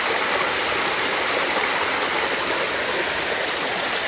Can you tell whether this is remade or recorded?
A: recorded